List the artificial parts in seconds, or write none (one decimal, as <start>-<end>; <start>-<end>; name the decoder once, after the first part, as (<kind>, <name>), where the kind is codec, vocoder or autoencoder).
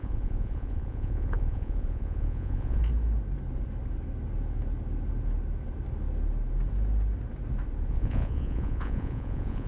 0.0-2.8 (vocoder, Vocos); 7.9-9.7